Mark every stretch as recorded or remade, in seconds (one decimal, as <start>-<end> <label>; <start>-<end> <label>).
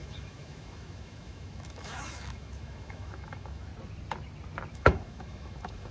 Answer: 0.0-3.7 remade; 3.7-4.7 recorded; 4.7-5.9 remade